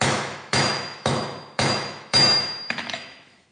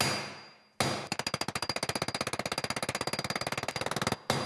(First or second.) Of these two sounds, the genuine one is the second